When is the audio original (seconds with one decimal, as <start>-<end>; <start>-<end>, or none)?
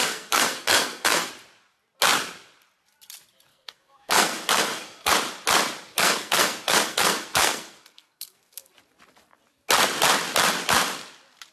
1.3-3.5; 5.1-5.9; 8.7-11.5